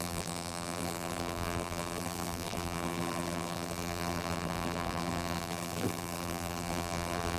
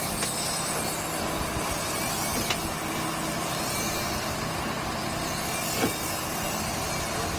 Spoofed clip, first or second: first